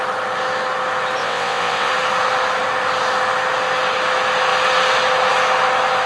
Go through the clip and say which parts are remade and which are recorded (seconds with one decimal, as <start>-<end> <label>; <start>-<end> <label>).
0.0-1.2 recorded; 1.2-1.9 remade; 1.9-6.1 recorded